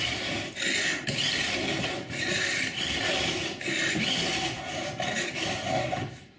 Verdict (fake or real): real